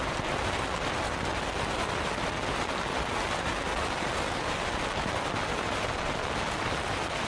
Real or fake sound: real